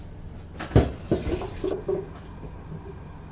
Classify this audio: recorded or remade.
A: recorded